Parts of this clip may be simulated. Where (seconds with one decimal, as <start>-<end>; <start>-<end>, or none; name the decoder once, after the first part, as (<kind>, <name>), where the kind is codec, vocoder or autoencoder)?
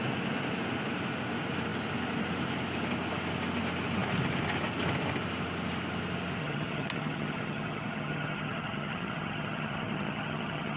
6.4-10.8 (vocoder, HiFi-GAN)